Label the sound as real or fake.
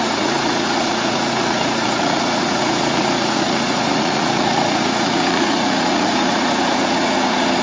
fake